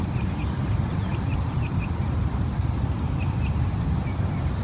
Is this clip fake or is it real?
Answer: real